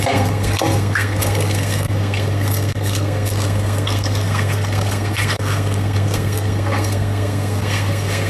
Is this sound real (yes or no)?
no